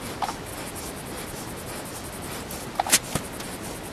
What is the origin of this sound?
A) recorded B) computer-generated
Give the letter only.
A